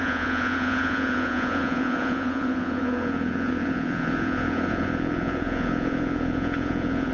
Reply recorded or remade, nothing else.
remade